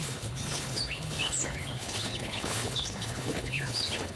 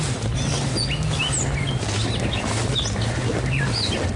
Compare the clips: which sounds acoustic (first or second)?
second